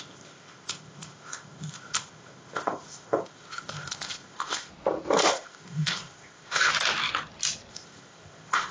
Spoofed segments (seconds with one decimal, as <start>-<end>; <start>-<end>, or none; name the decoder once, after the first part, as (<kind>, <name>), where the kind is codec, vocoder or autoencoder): 0.0-4.7 (codec, ZipCodec); 5.3-6.7; 7.7-8.7